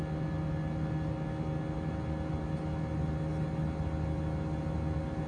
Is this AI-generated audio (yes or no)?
no